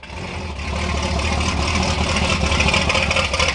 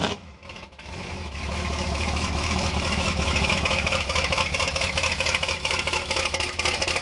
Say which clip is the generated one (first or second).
second